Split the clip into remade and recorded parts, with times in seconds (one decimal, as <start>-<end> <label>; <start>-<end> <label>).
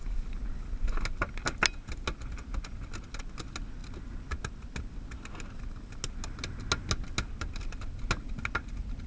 0.0-9.1 recorded